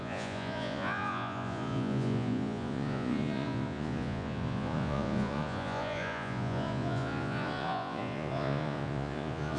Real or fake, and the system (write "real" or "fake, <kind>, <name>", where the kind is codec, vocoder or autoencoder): fake, vocoder, Vocos